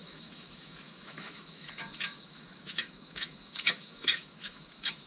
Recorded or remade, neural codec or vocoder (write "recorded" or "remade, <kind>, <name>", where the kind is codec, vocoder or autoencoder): remade, autoencoder, DAC-VAE